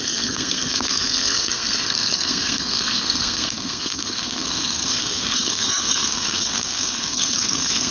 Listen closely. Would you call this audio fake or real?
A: fake